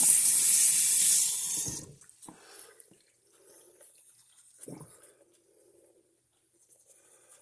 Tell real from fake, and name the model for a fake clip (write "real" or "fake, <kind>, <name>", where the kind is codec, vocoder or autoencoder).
fake, vocoder, BigVGAN v2